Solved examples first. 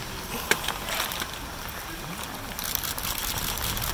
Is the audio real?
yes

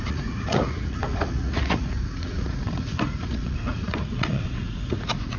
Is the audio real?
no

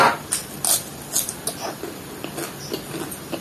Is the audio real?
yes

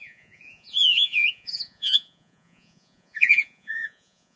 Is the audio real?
no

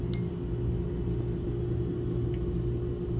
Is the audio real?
yes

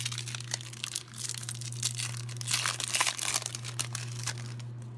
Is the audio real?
yes